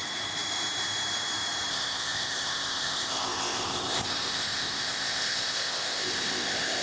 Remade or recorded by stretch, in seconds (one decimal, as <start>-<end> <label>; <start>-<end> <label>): 0.0-1.7 recorded; 1.7-6.8 remade